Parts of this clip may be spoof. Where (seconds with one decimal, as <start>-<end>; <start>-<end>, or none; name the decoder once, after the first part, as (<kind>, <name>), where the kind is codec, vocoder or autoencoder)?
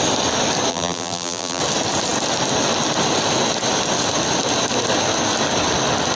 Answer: 0.7-1.6 (vocoder, BigVGAN v2)